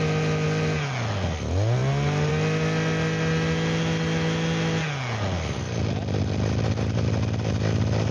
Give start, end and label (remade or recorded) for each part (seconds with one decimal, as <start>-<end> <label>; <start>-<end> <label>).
0.0-8.1 recorded